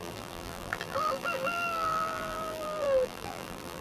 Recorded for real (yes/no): no